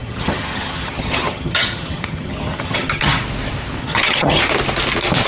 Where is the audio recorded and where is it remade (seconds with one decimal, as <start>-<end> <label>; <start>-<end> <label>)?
0.0-3.2 remade; 3.2-3.8 recorded; 3.8-4.4 remade; 4.4-5.3 recorded